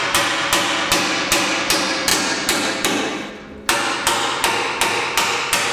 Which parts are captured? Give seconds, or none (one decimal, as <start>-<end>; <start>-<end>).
0.0-5.7